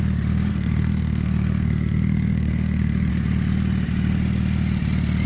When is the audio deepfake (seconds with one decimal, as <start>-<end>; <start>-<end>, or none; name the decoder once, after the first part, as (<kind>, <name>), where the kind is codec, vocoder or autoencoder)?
0.5-3.1 (codec, SNAC)